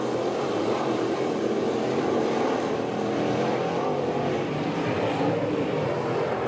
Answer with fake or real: fake